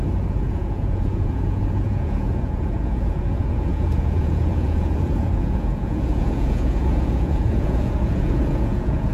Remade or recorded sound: remade